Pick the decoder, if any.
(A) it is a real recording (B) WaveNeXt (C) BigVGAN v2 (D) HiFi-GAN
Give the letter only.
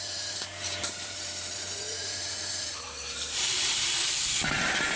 C